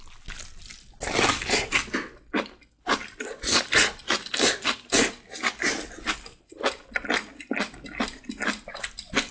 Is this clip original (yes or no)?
yes